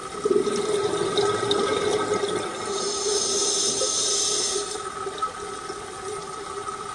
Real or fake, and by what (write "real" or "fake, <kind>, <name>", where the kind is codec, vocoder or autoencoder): real